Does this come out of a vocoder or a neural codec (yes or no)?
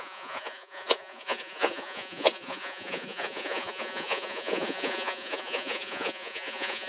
yes